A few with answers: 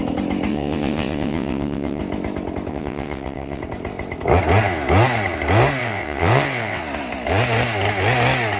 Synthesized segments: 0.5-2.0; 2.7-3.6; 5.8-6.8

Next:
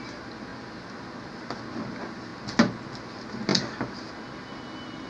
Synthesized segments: none

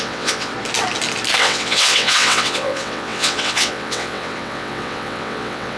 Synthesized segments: 0.0-0.5; 1.4-5.8

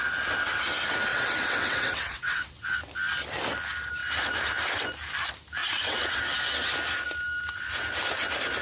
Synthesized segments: 1.1-2.7; 5.6-6.2

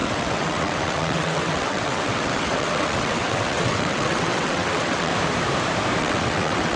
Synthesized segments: 0.0-5.1; 6.0-6.8

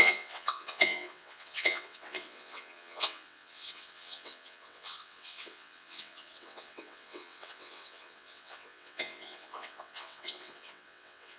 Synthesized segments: 0.0-11.4

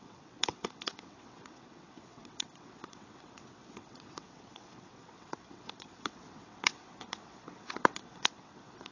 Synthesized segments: 0.0-8.9